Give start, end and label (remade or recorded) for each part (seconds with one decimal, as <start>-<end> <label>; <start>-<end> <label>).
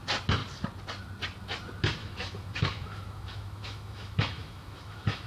0.0-2.0 recorded; 2.0-5.3 remade